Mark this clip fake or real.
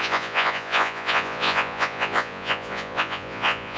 fake